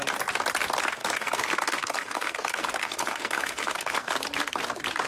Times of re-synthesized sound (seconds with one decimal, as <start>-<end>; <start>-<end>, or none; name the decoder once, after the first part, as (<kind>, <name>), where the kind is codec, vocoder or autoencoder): 1.0-4.1 (codec, SNAC)